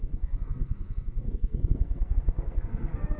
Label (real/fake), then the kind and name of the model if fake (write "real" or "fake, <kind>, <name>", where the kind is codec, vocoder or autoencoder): fake, codec, SNAC